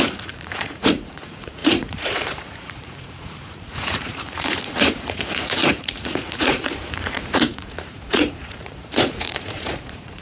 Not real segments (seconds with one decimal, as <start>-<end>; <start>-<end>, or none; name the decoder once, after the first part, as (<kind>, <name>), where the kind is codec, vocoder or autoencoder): 0.0-10.2 (vocoder, Vocos)